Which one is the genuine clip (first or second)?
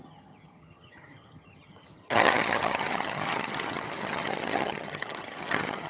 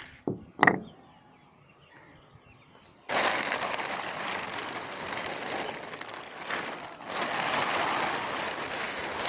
second